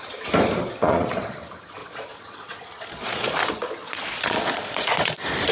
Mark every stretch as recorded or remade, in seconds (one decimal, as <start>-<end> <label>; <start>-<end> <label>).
0.0-0.7 recorded; 0.7-1.4 remade; 1.4-1.8 recorded; 1.8-5.1 remade; 5.1-5.5 recorded